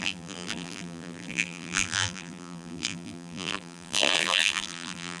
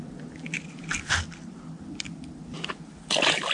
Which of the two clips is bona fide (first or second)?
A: second